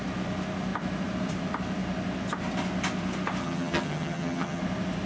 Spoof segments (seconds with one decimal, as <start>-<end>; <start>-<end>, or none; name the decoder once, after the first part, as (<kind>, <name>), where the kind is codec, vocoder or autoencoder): 3.4-4.6 (vocoder, HiFi-GAN)